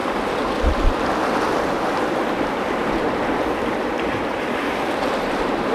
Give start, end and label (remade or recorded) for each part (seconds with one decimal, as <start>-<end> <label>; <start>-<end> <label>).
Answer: 0.0-3.8 recorded; 3.8-5.7 remade